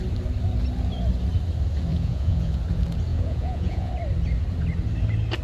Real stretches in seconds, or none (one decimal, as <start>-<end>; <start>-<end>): 0.0-1.9; 2.6-3.1; 3.9-5.4